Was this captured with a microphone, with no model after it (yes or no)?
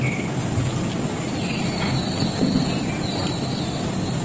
yes